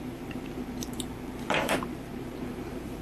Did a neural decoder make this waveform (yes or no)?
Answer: yes